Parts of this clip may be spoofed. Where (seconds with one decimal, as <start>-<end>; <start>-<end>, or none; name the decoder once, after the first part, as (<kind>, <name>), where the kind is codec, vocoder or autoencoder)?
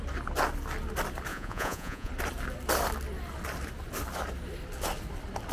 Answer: 1.3-2.1 (vocoder, Vocos)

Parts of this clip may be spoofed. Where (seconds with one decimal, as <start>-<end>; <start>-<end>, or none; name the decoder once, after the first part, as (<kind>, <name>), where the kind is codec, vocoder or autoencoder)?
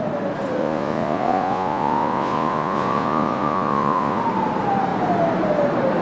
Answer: 0.6-4.2 (vocoder, Vocos)